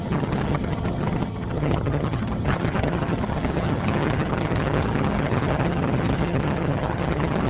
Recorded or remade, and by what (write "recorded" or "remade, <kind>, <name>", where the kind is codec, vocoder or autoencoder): remade, vocoder, HiFi-GAN